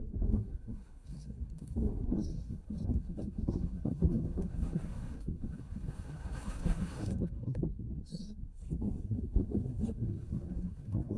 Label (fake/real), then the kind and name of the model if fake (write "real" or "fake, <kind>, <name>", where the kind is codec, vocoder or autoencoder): fake, codec, SNAC